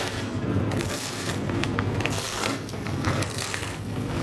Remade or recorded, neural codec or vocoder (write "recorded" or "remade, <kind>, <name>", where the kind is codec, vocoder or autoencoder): remade, codec, SNAC